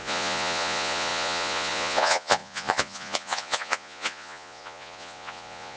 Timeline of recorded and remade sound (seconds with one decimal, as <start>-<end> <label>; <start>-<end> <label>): 0.0-5.8 remade